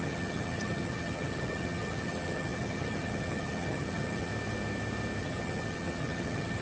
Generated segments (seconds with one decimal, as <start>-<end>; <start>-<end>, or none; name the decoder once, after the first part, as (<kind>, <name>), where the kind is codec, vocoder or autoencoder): 0.0-4.3 (vocoder, HiFi-GAN); 5.2-6.6